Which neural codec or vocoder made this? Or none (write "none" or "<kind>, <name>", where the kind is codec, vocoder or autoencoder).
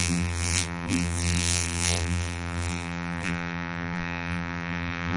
vocoder, BigVGAN v2